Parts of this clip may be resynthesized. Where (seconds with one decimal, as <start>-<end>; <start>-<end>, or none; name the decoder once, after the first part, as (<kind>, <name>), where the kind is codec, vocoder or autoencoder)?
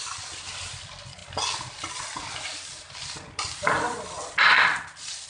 none